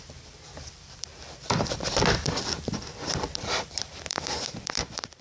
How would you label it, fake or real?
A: fake